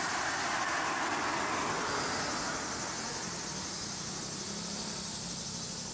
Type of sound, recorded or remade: recorded